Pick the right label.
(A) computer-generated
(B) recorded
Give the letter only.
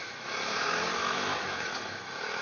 A